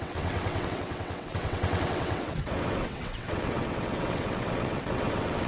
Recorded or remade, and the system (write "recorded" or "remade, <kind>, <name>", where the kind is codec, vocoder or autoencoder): remade, vocoder, WaveNeXt